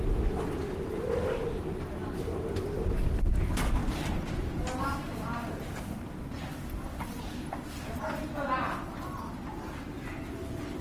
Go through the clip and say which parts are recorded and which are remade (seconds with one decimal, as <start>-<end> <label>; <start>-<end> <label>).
0.0-10.8 recorded